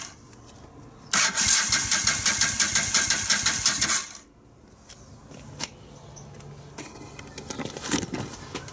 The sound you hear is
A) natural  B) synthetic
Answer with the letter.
A